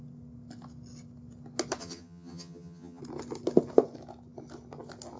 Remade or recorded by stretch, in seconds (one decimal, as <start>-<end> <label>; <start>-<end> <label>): 0.0-1.8 recorded; 1.8-3.0 remade; 3.0-5.2 recorded